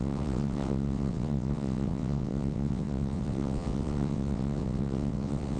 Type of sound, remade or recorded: remade